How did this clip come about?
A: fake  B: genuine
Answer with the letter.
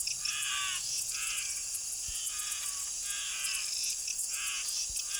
B